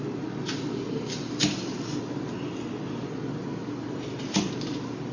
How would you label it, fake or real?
real